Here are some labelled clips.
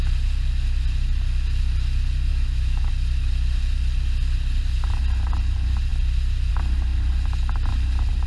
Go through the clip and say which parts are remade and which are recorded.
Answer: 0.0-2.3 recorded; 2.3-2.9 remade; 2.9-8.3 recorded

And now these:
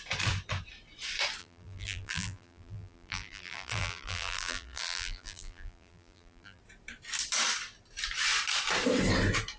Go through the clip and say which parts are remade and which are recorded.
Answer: 0.0-1.4 recorded; 1.4-6.6 remade; 6.6-9.6 recorded

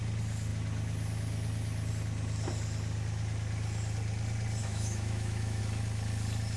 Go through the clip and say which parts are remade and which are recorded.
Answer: 0.0-4.6 recorded; 4.6-5.6 remade; 5.6-6.6 recorded

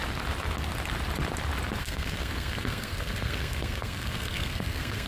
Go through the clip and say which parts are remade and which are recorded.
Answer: 0.0-1.8 recorded; 1.8-5.1 remade